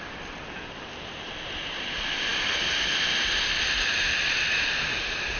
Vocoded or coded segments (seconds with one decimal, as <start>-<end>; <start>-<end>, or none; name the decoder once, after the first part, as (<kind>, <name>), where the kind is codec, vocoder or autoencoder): none

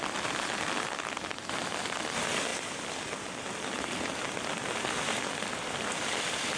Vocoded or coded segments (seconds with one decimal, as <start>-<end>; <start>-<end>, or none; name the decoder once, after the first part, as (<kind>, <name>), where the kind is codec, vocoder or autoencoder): none

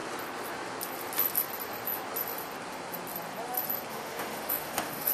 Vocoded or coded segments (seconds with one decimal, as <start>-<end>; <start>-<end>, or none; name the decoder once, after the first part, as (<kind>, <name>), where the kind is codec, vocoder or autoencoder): 3.9-5.1 (autoencoder, DAC-VAE)

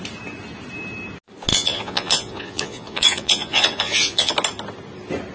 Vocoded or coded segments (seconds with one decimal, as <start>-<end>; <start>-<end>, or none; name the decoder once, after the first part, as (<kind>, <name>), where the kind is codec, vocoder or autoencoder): 1.5-4.3 (vocoder, Vocos)

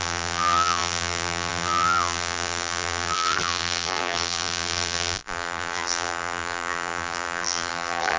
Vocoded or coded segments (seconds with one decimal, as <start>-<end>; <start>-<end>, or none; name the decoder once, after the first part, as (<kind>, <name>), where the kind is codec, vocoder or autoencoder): 0.0-8.2 (vocoder, BigVGAN v2)

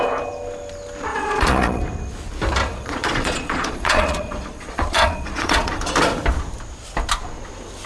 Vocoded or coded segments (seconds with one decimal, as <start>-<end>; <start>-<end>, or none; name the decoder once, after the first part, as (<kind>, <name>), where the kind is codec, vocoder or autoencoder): 1.1-1.8 (vocoder, Vocos); 2.7-5.8